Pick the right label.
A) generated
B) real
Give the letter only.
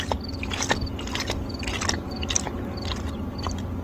B